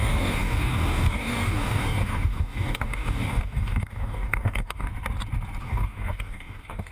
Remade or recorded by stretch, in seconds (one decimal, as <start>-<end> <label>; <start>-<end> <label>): 0.0-4.9 remade; 4.9-5.6 recorded; 5.6-6.9 remade